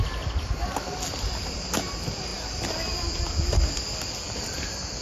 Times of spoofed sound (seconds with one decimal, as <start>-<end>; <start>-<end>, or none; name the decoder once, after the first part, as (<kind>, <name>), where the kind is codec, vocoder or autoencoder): none

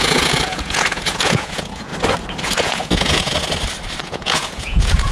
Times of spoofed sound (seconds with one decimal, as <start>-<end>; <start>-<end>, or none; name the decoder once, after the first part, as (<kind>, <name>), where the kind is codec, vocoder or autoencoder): 0.0-1.9 (vocoder, Vocos); 2.6-3.3; 4.0-5.1

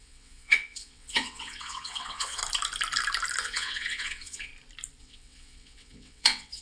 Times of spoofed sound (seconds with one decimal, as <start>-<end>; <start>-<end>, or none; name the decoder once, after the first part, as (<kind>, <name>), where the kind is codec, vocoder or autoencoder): 0.0-2.4 (vocoder, WaveNeXt); 3.4-4.5; 5.0-6.6

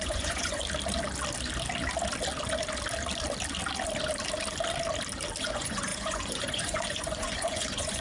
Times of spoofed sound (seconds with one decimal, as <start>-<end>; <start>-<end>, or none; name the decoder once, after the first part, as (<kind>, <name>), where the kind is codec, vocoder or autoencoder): 0.0-0.6 (vocoder, Vocos); 5.4-8.0